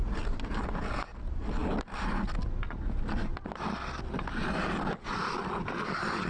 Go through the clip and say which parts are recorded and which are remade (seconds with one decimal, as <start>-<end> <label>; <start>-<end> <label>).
0.0-6.3 recorded